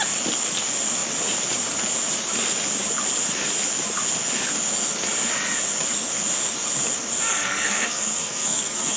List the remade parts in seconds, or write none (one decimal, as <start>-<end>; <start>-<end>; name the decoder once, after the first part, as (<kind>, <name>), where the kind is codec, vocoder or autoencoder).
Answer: 7.3-9.0 (codec, SNAC)